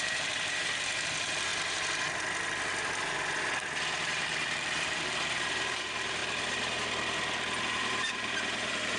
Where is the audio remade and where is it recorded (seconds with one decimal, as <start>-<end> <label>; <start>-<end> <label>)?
0.0-1.5 remade; 1.5-3.9 recorded; 3.9-6.2 remade; 6.2-7.6 recorded; 7.6-9.0 remade